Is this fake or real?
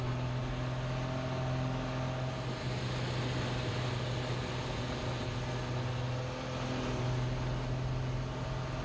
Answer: real